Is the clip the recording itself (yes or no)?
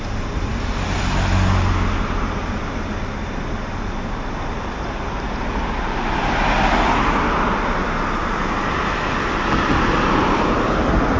yes